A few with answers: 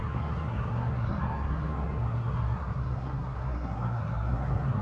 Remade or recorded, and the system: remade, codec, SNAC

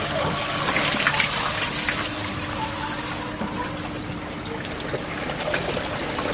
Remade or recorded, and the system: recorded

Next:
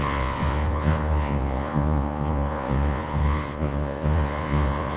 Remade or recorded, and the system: remade, vocoder, Vocos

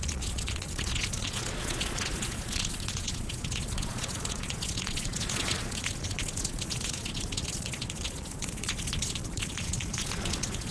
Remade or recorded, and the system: remade, vocoder, Vocos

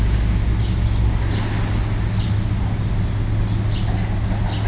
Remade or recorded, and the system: recorded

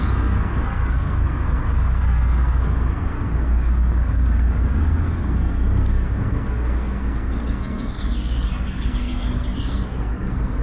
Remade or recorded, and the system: remade, codec, SNAC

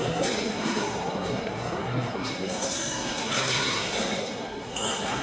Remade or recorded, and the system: remade, codec, SNAC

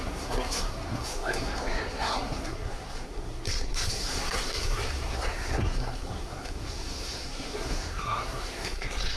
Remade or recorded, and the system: remade, codec, SNAC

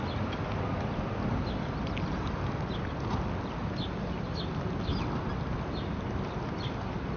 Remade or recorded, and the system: recorded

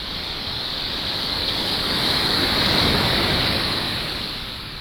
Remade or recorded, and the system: remade, codec, DAC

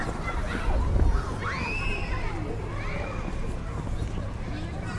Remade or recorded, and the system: recorded